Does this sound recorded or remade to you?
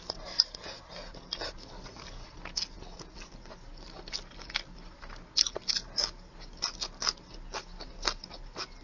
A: recorded